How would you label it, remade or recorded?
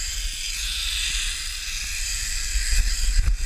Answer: recorded